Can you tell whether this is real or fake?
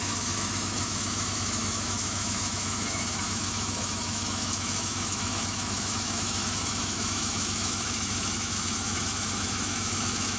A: fake